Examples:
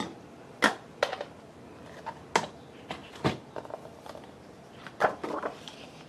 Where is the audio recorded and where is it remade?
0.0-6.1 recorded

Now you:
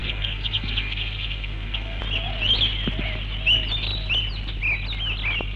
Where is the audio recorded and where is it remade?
0.0-2.0 remade; 2.0-5.6 recorded